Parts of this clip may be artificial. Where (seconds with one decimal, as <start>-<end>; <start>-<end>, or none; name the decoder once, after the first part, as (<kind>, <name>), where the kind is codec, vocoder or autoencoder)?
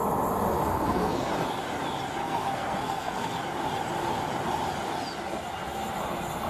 0.7-1.3 (codec, SNAC); 2.2-3.4